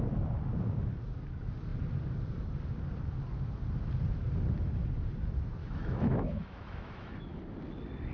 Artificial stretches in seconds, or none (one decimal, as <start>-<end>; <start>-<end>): 5.6-7.4